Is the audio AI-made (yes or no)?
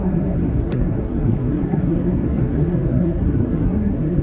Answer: yes